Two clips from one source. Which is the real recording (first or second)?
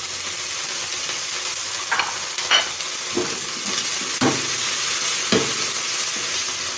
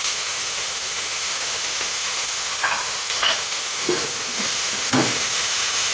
first